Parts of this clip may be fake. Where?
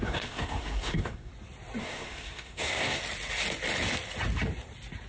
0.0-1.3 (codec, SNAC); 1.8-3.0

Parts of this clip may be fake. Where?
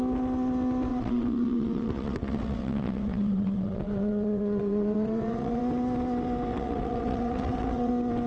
0.9-5.6 (vocoder, WaveNeXt); 6.5-7.9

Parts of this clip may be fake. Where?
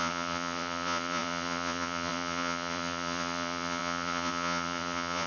0.0-5.3 (vocoder, Vocos)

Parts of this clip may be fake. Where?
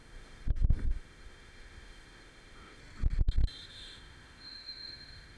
0.0-2.8 (autoencoder, DAC-VAE); 3.7-5.4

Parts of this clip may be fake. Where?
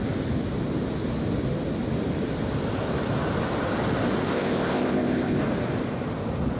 4.3-5.4 (codec, ZipCodec)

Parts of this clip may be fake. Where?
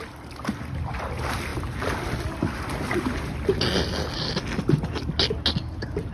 none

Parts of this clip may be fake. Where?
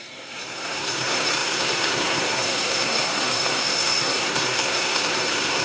0.0-5.6 (codec, SNAC)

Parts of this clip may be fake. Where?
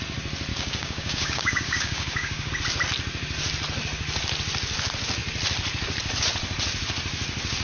0.5-2.5 (codec, DAC)